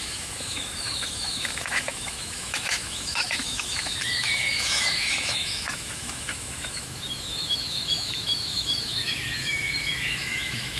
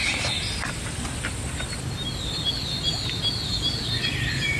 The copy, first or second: first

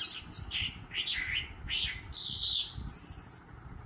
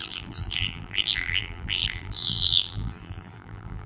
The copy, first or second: second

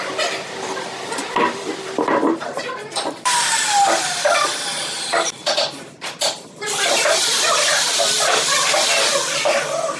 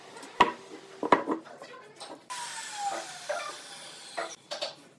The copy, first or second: first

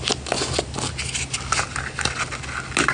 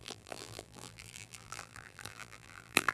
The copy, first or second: second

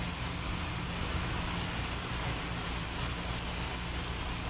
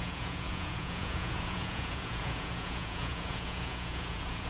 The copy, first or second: second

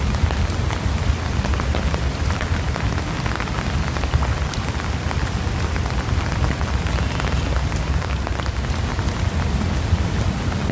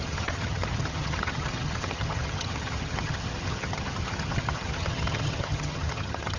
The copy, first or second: second